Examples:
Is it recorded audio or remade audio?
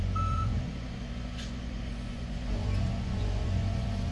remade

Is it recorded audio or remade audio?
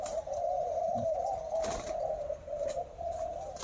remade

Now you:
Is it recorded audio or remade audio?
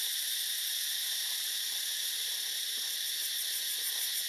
remade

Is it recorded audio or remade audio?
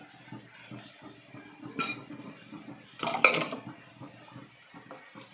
recorded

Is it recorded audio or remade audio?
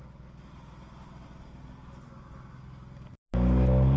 recorded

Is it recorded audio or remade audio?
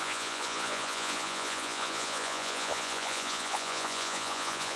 remade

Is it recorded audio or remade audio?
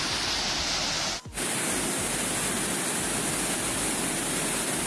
recorded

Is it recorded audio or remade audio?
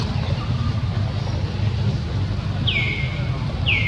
recorded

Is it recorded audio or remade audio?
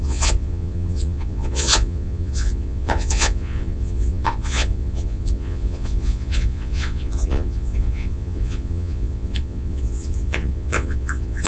remade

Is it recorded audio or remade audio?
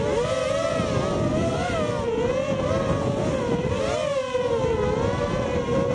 recorded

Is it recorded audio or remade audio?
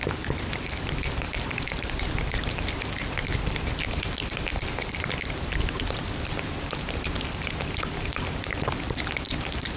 remade